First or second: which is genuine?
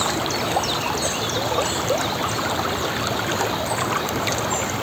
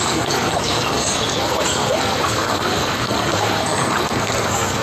first